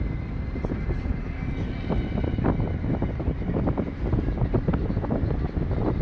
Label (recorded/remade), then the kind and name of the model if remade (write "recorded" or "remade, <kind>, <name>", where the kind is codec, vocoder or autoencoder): recorded